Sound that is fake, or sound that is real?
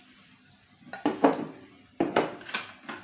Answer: real